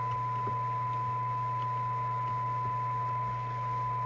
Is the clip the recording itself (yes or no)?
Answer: yes